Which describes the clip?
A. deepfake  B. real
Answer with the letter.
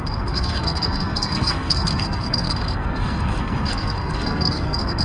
A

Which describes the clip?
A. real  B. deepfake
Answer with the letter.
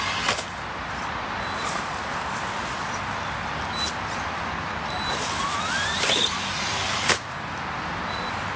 A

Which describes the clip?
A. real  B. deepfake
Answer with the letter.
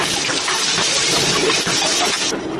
A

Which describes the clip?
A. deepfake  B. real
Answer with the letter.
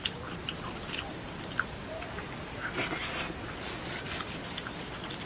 B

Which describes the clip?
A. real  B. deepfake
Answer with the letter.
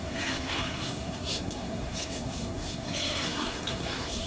B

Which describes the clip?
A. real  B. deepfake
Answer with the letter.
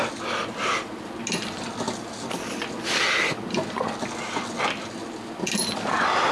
A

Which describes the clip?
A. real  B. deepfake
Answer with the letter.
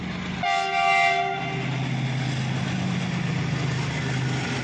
A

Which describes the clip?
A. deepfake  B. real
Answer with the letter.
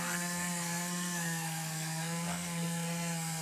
A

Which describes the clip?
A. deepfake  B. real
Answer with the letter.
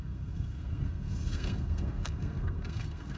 A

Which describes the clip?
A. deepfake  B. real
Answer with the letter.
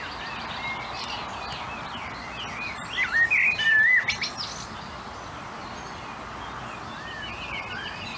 B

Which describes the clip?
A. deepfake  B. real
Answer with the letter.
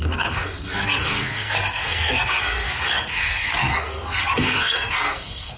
A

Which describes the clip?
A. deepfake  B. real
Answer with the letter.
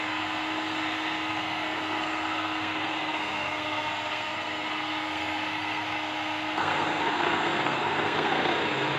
A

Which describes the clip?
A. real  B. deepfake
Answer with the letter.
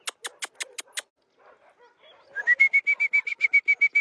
A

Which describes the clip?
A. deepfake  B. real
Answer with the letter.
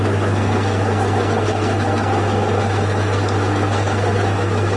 A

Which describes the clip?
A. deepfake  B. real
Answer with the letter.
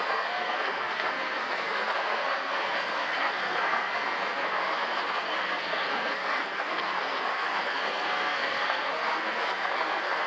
A